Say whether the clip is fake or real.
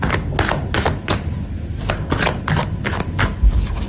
real